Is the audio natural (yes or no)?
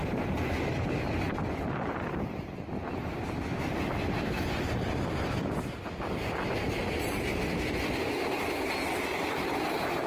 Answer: yes